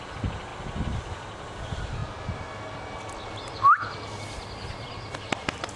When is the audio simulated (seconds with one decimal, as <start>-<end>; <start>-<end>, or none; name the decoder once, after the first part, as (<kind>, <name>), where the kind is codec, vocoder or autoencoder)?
0.0-0.5 (vocoder, BigVGAN v2); 1.0-2.0; 5.1-5.8